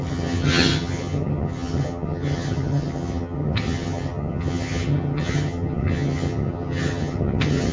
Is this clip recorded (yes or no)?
no